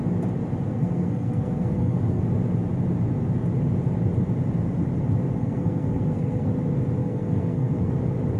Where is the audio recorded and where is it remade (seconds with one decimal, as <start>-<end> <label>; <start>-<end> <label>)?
0.0-0.7 recorded; 0.7-2.2 remade; 2.2-5.4 recorded; 5.4-6.5 remade; 6.5-7.0 recorded; 7.0-7.9 remade; 7.9-8.4 recorded